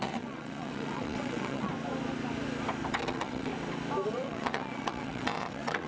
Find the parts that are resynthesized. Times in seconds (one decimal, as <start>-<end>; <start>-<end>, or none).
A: 0.0-1.7; 3.0-3.5; 4.1-5.9